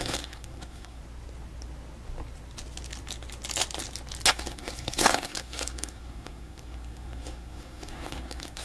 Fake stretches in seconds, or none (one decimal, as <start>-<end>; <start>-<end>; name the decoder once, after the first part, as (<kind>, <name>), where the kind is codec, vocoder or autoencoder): 0.0-1.0 (codec, SNAC); 4.3-8.6